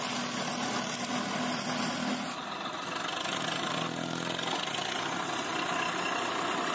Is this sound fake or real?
real